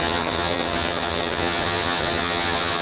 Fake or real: fake